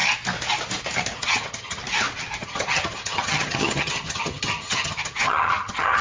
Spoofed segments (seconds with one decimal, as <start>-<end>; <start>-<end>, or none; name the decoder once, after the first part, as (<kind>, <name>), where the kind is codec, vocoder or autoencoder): 1.2-1.8 (vocoder, HiFi-GAN); 2.4-6.0